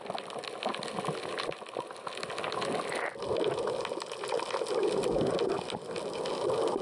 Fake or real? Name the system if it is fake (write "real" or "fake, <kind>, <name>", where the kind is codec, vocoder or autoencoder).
real